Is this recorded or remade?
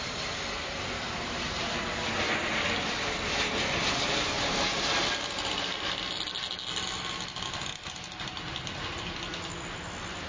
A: recorded